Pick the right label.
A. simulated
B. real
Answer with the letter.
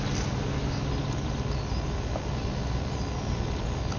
B